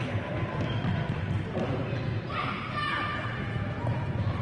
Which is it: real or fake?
real